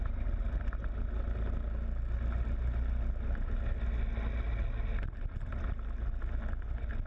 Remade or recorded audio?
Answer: recorded